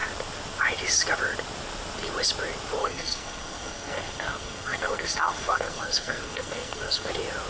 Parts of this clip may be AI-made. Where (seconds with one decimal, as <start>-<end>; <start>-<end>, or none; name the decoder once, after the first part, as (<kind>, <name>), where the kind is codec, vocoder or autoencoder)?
2.8-7.1 (codec, SNAC)